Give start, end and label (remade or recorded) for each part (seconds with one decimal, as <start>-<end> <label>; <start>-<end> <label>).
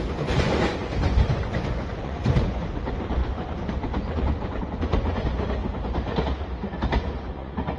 0.0-5.6 remade; 5.6-7.3 recorded; 7.3-7.8 remade